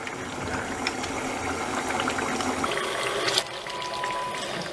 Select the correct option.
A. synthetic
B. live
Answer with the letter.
B